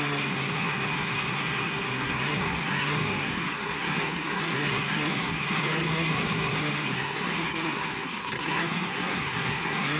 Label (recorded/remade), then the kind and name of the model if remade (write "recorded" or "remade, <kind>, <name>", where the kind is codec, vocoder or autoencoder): remade, codec, SNAC